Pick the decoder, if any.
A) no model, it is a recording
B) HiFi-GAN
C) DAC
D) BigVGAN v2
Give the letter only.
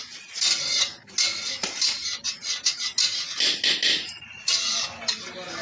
A